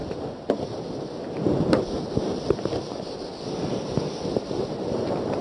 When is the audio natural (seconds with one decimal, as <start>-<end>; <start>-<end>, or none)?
0.0-4.3